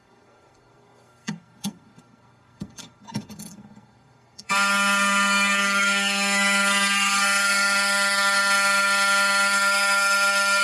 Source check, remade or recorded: remade